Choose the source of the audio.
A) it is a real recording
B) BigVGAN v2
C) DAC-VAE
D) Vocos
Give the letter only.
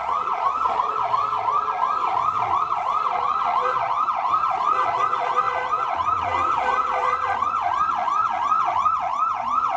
D